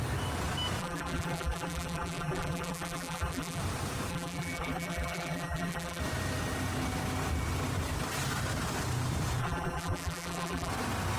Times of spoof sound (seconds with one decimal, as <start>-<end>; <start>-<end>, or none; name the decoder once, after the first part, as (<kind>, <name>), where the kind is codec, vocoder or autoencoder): 0.8-3.6 (vocoder, BigVGAN v2); 4.1-6.0; 9.4-10.7